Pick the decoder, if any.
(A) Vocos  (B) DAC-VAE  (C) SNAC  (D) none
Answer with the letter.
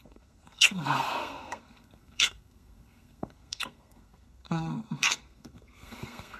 C